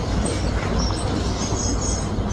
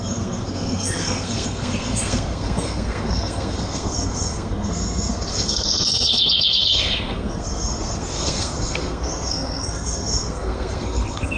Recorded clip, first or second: first